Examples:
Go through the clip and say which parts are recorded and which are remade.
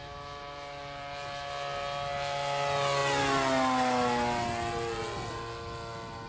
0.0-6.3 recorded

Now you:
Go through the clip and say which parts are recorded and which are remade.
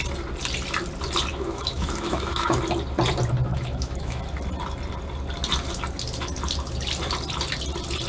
0.0-1.3 recorded; 1.3-2.6 remade; 2.6-3.5 recorded; 3.5-4.2 remade; 4.2-8.1 recorded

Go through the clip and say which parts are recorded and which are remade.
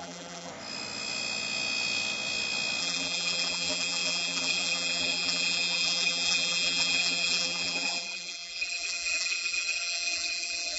0.0-0.5 remade; 0.5-2.8 recorded; 2.8-10.8 remade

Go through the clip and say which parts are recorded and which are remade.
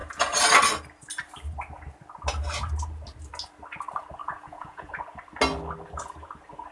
0.0-4.2 recorded; 4.2-4.9 remade; 4.9-6.7 recorded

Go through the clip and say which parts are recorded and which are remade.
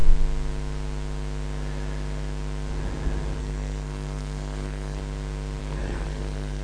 0.0-3.4 recorded; 3.4-5.0 remade; 5.0-5.6 recorded; 5.6-6.6 remade